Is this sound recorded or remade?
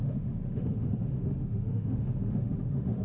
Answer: remade